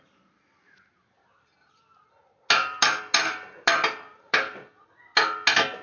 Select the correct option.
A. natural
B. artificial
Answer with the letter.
A